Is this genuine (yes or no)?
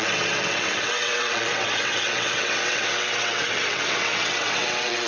no